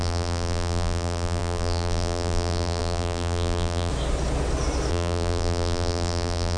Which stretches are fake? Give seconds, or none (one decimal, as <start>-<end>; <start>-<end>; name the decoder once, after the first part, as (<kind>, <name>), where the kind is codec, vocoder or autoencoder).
0.0-3.9 (vocoder, BigVGAN v2); 4.9-6.6